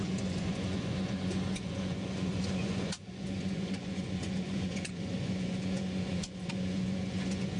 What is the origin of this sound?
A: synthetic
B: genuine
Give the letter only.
A